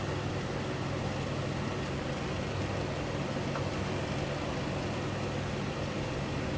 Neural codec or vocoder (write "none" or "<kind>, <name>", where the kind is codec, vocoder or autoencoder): none